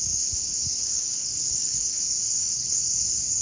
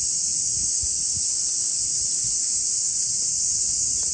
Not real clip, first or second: first